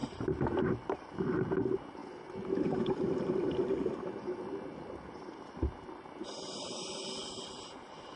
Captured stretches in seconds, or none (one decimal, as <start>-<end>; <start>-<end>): 0.0-8.2